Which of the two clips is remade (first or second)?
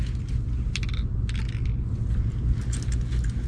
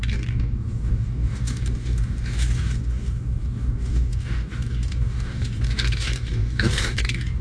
second